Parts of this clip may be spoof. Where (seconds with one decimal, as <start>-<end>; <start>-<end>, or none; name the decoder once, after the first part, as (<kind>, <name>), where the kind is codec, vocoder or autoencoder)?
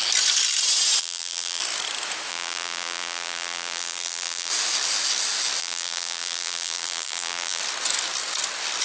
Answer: 1.0-1.6 (vocoder, BigVGAN v2); 2.3-4.5; 5.6-7.6